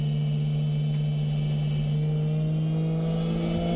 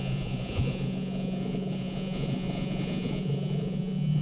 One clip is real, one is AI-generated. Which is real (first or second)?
first